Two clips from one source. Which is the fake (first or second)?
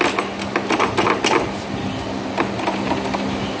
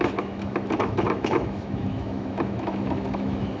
second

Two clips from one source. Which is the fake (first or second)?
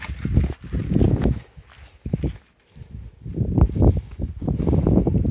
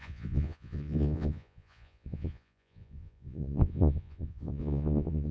second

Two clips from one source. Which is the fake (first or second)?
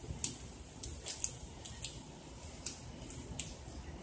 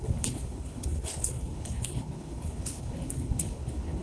second